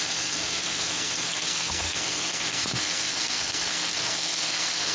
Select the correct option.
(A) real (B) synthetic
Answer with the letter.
B